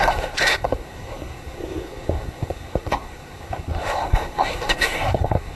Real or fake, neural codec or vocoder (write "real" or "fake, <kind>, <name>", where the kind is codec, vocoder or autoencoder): fake, codec, SNAC